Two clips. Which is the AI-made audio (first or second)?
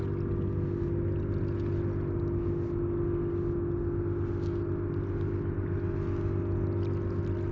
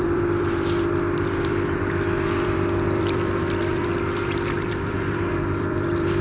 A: second